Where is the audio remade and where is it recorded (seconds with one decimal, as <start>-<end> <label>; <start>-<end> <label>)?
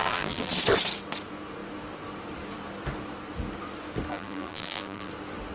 0.0-0.5 remade; 0.5-4.1 recorded; 4.1-5.1 remade; 5.1-5.5 recorded